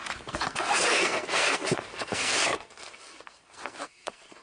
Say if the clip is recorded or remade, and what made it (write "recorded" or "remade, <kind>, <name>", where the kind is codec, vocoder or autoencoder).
remade, codec, SNAC